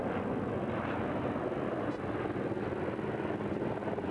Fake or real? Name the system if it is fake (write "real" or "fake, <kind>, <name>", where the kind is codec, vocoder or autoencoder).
real